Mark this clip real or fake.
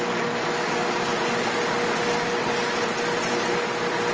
real